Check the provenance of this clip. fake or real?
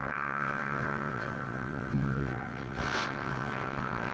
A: fake